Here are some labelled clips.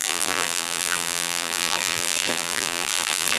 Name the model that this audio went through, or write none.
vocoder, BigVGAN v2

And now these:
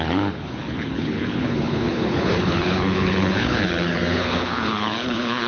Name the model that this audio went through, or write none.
codec, HILCodec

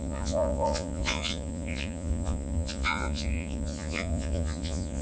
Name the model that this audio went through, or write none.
vocoder, Vocos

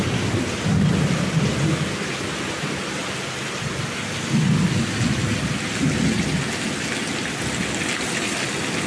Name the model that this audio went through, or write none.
none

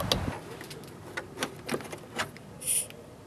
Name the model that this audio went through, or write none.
none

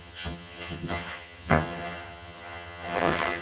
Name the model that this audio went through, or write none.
vocoder, HiFi-GAN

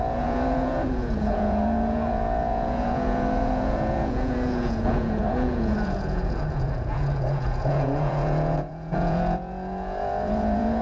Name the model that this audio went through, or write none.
vocoder, Vocos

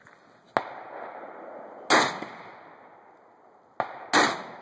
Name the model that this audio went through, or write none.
none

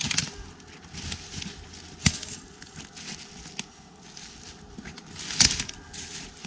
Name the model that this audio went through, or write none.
none